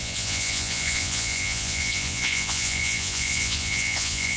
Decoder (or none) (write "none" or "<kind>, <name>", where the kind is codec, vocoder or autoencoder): vocoder, Vocos